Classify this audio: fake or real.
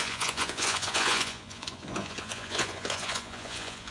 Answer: fake